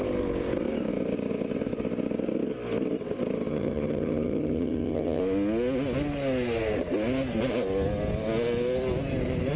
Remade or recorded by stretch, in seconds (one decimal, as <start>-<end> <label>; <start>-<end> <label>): 0.0-3.5 recorded; 3.5-5.2 remade; 5.2-9.6 recorded